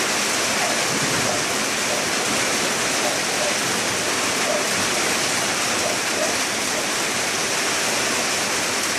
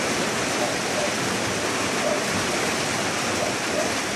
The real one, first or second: first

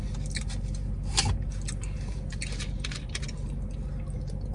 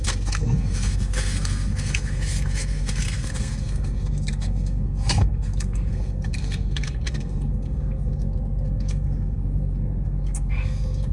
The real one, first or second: first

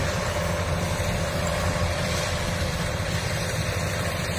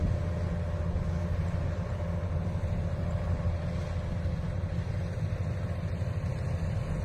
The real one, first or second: second